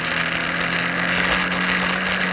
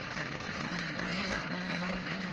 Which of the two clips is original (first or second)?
first